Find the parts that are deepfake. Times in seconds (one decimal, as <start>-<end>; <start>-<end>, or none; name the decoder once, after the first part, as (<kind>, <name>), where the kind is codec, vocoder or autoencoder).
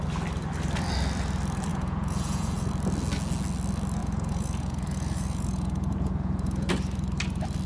1.7-2.7 (vocoder, Vocos); 4.0-6.7